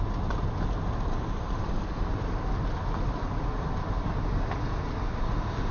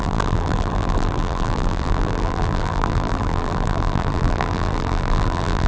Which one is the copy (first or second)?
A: second